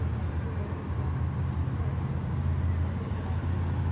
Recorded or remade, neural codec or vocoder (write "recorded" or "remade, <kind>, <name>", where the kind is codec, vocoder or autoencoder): recorded